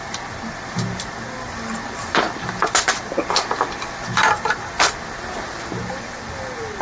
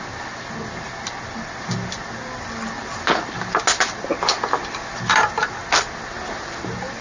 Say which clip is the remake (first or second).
first